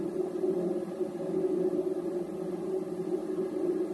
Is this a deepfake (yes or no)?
no